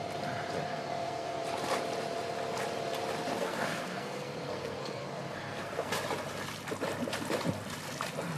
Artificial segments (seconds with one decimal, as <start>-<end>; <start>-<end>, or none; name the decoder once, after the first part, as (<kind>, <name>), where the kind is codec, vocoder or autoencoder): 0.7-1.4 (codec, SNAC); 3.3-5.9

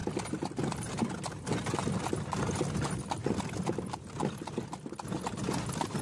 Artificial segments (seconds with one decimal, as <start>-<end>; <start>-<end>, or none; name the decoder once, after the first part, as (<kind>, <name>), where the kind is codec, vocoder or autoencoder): none

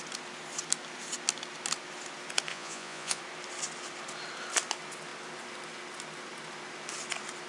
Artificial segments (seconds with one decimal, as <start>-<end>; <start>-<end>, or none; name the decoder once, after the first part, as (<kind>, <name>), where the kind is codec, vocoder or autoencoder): 2.5-3.2 (vocoder, Vocos)

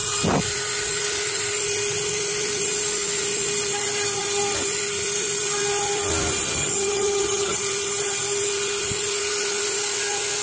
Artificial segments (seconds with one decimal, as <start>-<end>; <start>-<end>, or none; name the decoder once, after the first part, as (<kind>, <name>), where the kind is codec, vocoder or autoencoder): 6.6-7.6 (vocoder, HiFi-GAN)

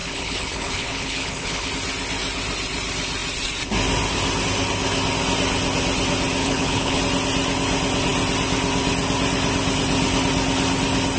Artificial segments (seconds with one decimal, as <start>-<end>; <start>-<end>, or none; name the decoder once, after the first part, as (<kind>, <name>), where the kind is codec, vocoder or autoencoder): 0.0-1.7 (codec, HILCodec); 6.4-7.0

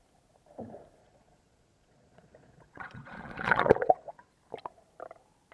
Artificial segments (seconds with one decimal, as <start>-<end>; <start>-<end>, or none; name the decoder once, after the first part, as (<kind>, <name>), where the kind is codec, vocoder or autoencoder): 1.0-4.3 (vocoder, Vocos)

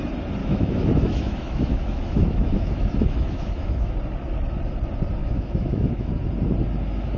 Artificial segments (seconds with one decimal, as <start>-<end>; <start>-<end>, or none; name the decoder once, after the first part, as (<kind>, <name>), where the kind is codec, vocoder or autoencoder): 0.4-3.9 (autoencoder, DAC-VAE); 5.2-6.1

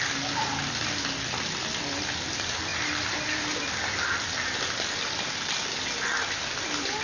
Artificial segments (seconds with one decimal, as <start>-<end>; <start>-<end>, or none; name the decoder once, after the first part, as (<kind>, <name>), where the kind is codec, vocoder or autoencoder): none